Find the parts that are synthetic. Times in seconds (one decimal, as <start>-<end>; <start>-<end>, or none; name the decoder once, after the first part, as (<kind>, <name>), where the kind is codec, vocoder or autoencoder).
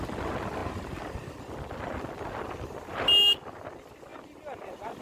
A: none